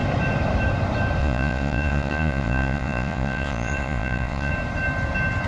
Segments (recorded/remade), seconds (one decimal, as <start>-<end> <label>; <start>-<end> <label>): 0.0-1.2 recorded; 1.2-4.5 remade; 4.5-5.5 recorded